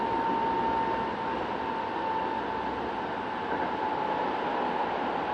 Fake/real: real